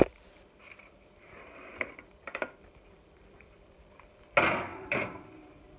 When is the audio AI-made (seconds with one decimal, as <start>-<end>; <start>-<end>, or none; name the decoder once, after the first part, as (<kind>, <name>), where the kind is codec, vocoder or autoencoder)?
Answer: 0.6-4.1 (vocoder, BigVGAN v2); 4.7-5.8